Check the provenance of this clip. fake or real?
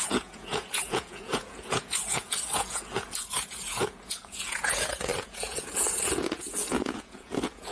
fake